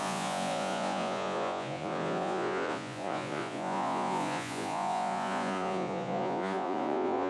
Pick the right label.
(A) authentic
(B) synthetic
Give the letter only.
B